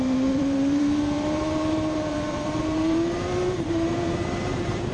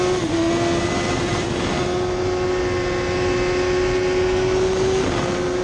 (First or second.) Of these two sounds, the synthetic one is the first